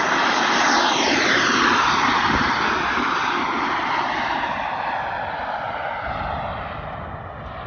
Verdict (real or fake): real